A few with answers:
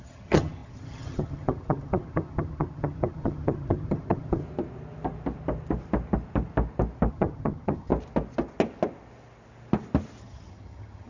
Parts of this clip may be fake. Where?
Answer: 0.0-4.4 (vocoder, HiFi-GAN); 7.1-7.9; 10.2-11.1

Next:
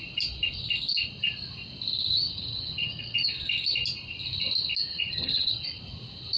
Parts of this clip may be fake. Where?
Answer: 2.1-3.3 (vocoder, HiFi-GAN); 4.9-5.8

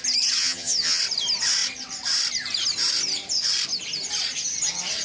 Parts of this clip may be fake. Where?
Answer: 0.4-1.0 (vocoder, HiFi-GAN)

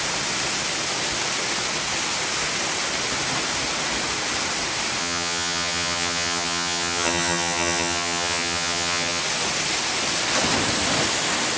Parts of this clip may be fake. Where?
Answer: 5.0-9.2 (vocoder, HiFi-GAN)

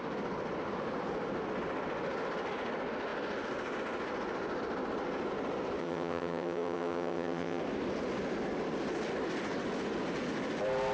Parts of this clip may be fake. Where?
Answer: 5.8-7.6 (vocoder, HiFi-GAN)